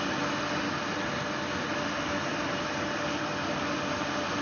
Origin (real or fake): real